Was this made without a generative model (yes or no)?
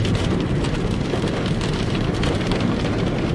no